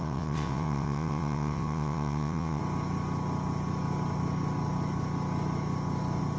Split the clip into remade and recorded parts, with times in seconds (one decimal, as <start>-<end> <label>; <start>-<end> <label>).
0.0-2.6 remade; 2.6-6.4 recorded